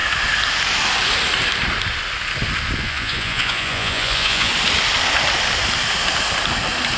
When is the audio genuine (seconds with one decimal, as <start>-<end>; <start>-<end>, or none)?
0.0-2.8; 4.5-7.0